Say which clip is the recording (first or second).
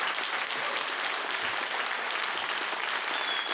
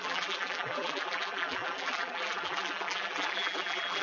first